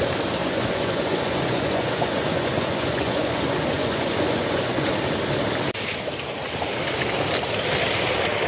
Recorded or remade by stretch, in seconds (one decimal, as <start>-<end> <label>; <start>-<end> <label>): 0.0-0.4 recorded; 0.4-4.9 remade; 4.9-8.5 recorded